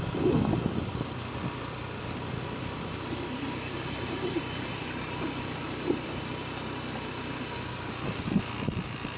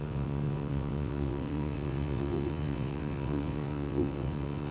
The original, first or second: first